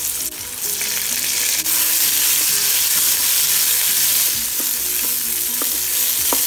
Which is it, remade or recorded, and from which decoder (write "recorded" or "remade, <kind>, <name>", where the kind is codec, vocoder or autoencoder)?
recorded